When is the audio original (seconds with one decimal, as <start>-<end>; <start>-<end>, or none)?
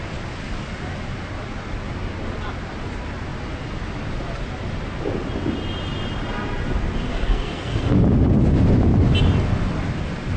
0.0-7.1; 7.9-10.4